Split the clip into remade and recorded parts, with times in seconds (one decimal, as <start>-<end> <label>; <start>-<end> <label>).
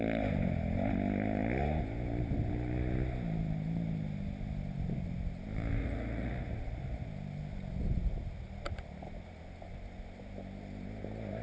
0.0-5.8 recorded; 5.8-6.3 remade; 6.3-11.4 recorded